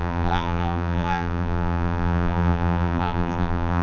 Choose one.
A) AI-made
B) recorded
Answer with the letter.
A